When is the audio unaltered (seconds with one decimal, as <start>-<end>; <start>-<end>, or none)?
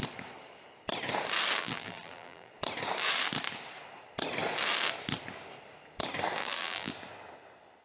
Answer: 0.0-1.6; 2.5-6.4; 6.9-7.8